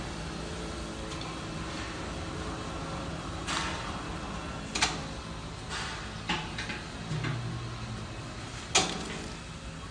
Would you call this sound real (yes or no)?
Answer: yes